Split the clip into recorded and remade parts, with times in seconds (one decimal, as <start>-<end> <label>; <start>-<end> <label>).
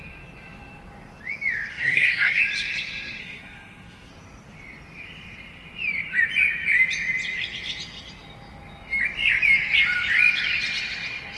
0.0-1.7 recorded; 1.7-2.4 remade; 2.4-3.2 recorded; 3.2-4.1 remade; 4.1-11.4 recorded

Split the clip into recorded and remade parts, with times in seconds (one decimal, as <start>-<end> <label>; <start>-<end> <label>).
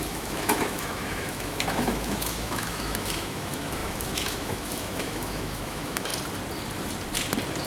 0.0-6.1 remade; 6.1-7.7 recorded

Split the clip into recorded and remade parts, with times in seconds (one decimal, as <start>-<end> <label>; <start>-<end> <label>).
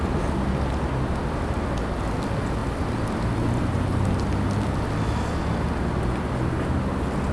0.0-7.3 recorded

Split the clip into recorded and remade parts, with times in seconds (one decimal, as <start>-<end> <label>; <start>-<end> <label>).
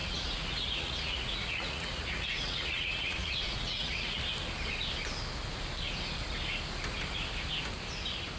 0.0-4.2 remade; 4.2-8.4 recorded